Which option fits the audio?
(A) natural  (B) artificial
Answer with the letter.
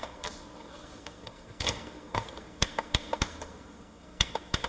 B